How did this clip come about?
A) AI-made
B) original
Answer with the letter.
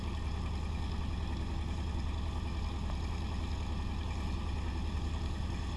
B